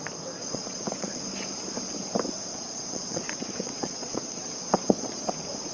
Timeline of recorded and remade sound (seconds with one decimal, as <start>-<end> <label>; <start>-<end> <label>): 0.0-0.4 recorded; 0.4-1.2 remade; 1.2-2.5 recorded; 2.5-5.3 remade; 5.3-5.7 recorded